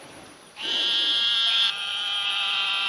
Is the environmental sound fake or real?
fake